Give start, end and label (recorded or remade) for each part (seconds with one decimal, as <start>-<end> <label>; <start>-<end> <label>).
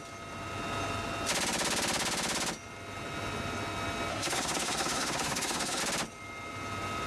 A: 0.0-4.1 recorded; 4.1-5.8 remade; 5.8-7.1 recorded